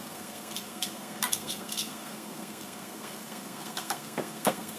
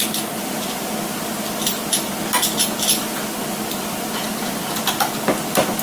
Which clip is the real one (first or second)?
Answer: second